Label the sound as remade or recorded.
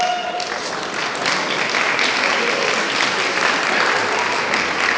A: recorded